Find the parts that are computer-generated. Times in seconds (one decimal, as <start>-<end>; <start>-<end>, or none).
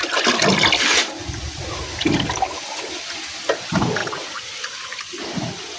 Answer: none